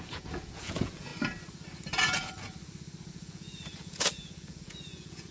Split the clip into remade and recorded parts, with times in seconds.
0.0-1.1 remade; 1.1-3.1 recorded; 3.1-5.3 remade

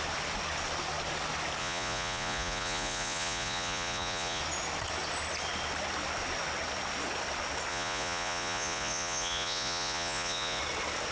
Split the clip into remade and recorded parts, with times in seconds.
0.0-1.6 recorded; 1.6-4.4 remade; 4.4-7.7 recorded; 7.7-10.6 remade; 10.6-11.1 recorded

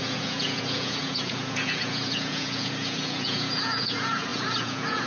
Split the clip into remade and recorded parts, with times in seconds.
0.0-5.1 remade

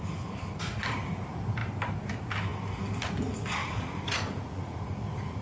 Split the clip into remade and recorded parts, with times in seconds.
0.0-3.6 recorded; 3.6-5.4 remade

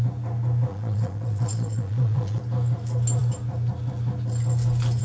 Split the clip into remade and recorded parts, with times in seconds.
0.0-0.7 recorded; 0.7-2.4 remade; 2.4-5.0 recorded

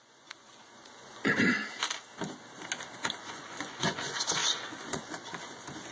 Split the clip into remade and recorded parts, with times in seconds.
0.0-1.6 remade; 1.6-3.2 recorded; 3.2-5.9 remade